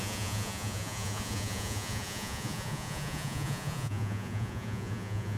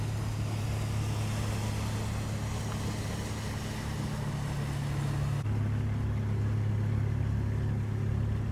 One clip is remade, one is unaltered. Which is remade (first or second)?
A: first